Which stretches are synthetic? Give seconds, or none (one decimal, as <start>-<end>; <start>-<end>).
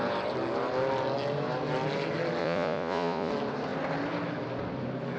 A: 2.4-3.3